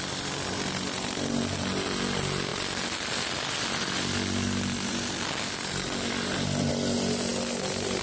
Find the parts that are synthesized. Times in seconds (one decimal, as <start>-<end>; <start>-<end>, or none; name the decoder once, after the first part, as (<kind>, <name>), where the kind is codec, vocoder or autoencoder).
none